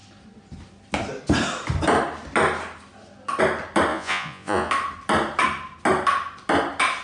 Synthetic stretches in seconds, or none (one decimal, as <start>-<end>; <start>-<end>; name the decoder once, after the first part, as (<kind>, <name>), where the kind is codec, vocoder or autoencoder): 3.9-4.7 (vocoder, Vocos)